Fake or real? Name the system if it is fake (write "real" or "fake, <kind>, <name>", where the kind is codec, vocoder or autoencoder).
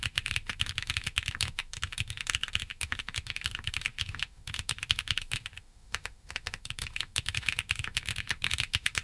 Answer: fake, autoencoder, DAC-VAE